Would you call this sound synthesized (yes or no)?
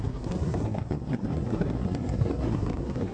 yes